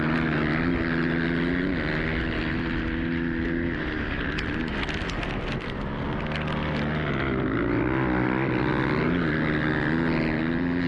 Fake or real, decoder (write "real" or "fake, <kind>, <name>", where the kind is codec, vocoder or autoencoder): real